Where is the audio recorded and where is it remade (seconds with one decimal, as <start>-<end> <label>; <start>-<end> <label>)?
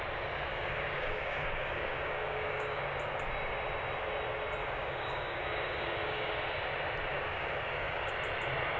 0.0-0.5 recorded; 0.5-2.8 remade; 2.8-4.6 recorded; 4.6-6.3 remade; 6.3-7.1 recorded; 7.1-8.1 remade; 8.1-8.8 recorded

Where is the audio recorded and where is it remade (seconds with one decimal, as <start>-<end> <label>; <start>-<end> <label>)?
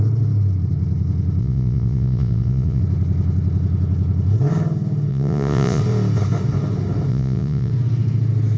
0.0-1.4 recorded; 1.4-2.8 remade; 2.8-5.1 recorded; 5.1-5.8 remade; 5.8-7.1 recorded; 7.1-7.7 remade; 7.7-8.6 recorded